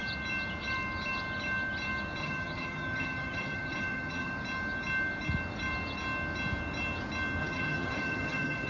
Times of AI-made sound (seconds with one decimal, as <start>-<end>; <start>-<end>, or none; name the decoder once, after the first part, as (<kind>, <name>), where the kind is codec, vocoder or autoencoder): 2.2-4.3 (vocoder, HiFi-GAN); 7.4-8.7